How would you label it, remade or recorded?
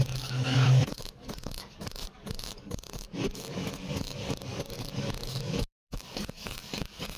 remade